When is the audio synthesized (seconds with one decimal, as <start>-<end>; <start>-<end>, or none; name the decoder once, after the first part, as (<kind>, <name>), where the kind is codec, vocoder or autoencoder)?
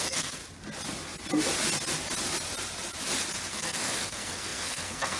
0.0-0.4 (codec, SNAC); 3.5-5.2